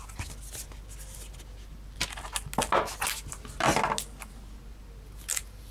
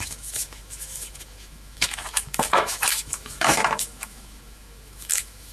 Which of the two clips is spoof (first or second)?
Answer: second